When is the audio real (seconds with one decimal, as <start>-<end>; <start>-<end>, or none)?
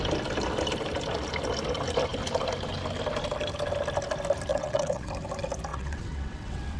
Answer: 0.0-4.5; 5.1-5.7